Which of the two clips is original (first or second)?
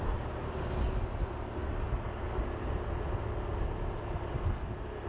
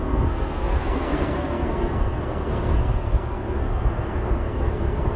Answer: first